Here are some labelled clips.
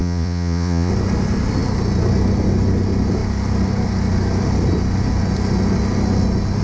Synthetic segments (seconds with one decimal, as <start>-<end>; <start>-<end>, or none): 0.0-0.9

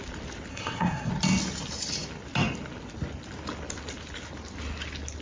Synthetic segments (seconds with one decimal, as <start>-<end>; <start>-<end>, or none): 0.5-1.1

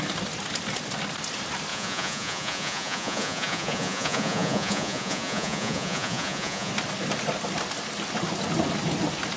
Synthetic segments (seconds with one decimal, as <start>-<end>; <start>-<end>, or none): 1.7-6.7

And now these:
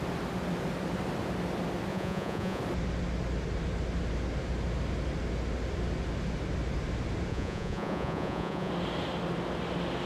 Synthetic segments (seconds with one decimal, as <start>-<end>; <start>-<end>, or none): 1.9-2.6; 7.3-8.7

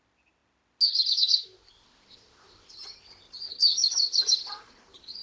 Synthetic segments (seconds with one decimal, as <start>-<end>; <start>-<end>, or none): none

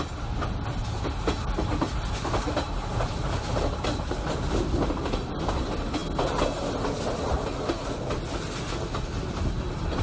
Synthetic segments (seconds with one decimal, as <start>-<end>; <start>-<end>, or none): none

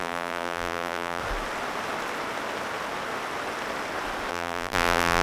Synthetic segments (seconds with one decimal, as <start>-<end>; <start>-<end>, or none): 0.0-1.2; 4.3-5.2

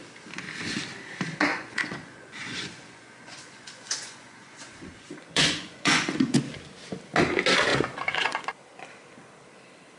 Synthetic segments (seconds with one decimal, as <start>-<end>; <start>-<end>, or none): 1.5-6.4; 7.7-8.4